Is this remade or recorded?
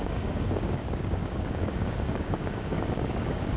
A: remade